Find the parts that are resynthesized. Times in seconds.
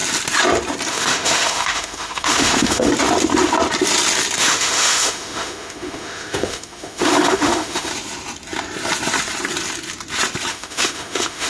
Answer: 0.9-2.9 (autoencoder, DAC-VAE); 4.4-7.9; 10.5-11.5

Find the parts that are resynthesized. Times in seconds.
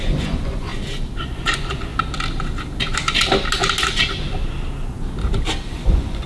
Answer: 0.0-0.7 (vocoder, Vocos); 1.2-1.9; 5.7-6.3